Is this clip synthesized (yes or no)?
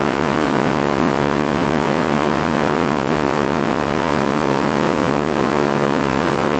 yes